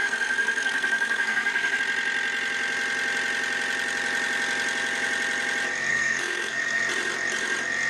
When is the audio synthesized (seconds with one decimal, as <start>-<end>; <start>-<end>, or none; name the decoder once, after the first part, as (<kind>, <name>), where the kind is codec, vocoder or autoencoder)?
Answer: 0.0-1.8 (codec, SNAC); 5.9-6.8